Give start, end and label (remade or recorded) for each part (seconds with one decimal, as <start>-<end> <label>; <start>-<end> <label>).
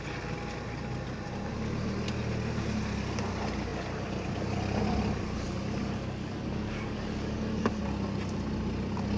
0.0-5.8 recorded; 5.8-7.8 remade; 7.8-9.2 recorded